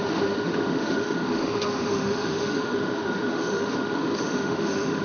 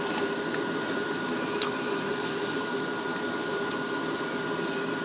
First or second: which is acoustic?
second